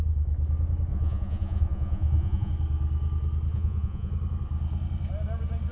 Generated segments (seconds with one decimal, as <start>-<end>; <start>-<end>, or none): 0.9-2.5; 3.5-4.1